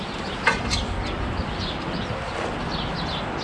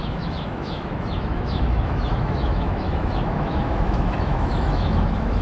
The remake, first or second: second